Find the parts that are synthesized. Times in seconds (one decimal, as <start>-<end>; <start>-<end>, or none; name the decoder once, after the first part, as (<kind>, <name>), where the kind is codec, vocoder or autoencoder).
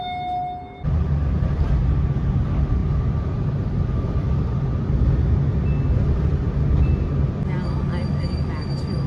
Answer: none